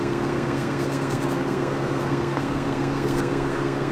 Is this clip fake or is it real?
fake